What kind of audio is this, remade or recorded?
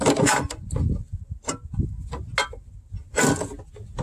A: recorded